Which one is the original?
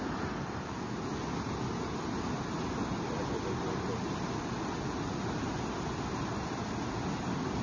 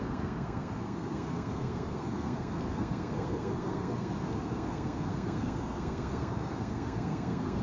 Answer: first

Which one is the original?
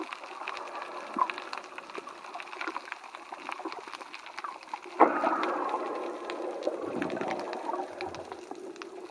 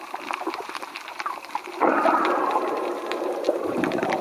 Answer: first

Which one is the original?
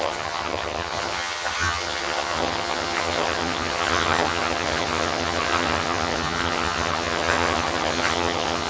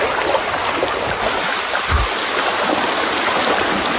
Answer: second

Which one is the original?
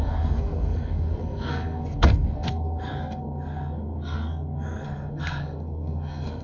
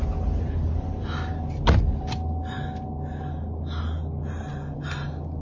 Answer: second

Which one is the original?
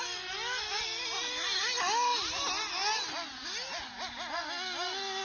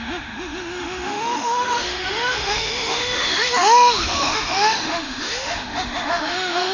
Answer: first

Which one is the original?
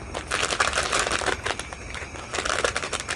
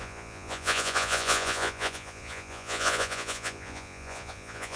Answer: first